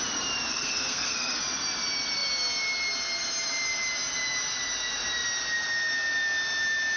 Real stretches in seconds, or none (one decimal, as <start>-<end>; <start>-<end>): 0.0-0.5; 1.4-7.0